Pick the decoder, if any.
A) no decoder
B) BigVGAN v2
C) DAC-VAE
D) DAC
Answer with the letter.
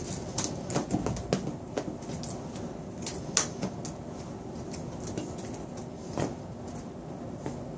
A